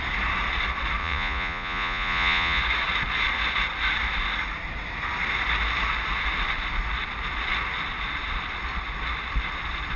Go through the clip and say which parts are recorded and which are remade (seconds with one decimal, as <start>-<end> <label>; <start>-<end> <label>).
0.0-1.0 recorded; 1.0-2.6 remade; 2.6-10.0 recorded